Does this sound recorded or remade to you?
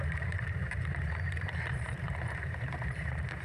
remade